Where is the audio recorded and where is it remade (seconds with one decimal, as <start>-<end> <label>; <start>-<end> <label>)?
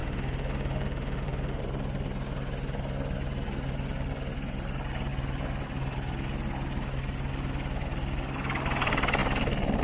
0.0-1.6 remade; 1.6-9.8 recorded